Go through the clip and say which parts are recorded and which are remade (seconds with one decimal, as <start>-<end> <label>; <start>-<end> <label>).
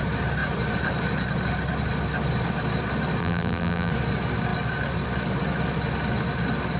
0.0-3.2 recorded; 3.2-3.9 remade; 3.9-6.8 recorded